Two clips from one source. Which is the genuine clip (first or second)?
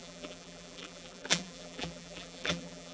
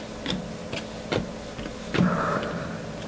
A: second